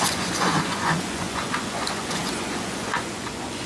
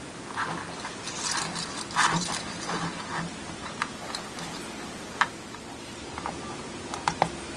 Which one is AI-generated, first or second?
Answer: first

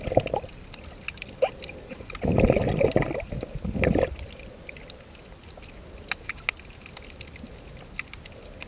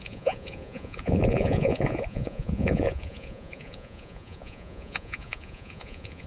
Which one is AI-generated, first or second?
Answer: second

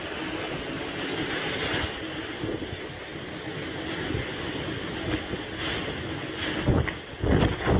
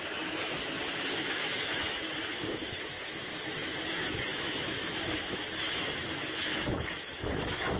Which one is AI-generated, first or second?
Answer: second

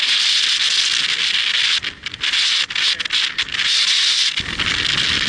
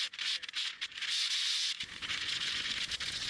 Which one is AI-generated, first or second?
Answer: second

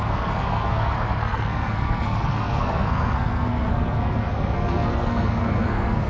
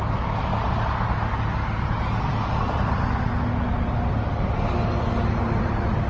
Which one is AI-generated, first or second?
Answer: first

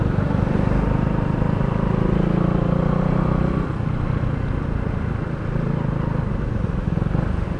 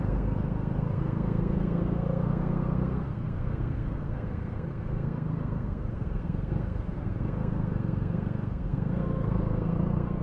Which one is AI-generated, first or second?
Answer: second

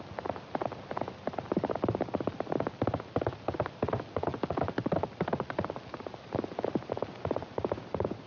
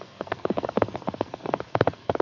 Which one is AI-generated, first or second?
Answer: second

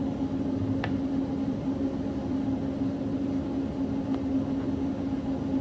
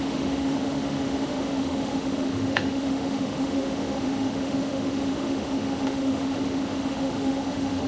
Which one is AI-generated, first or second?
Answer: second